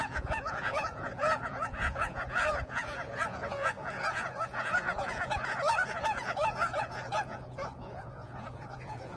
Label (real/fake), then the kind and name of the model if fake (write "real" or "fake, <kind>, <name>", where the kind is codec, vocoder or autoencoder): fake, vocoder, Vocos